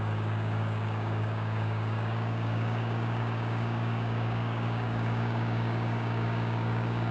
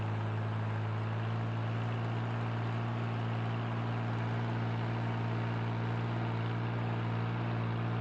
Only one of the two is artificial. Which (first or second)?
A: first